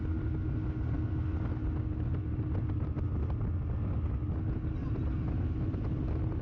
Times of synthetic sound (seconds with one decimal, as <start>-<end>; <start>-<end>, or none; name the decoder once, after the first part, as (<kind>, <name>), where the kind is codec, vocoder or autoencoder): none